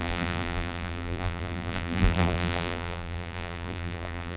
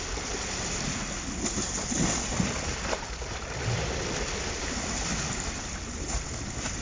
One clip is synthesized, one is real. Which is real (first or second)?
second